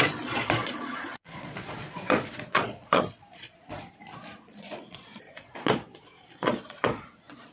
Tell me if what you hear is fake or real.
fake